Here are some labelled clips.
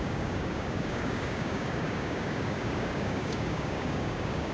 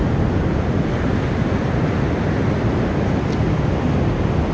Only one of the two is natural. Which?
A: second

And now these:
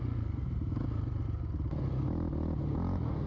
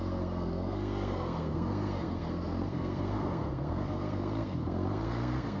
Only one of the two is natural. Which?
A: first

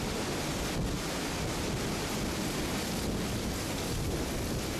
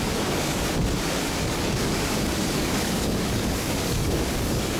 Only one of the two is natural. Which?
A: first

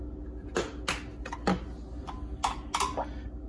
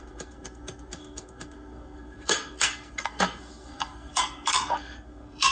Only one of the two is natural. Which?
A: first